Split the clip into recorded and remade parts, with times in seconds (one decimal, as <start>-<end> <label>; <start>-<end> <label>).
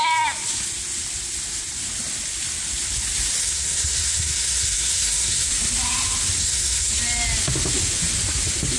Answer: 0.0-3.4 recorded; 3.4-5.5 remade; 5.5-6.4 recorded; 6.4-6.9 remade; 6.9-8.8 recorded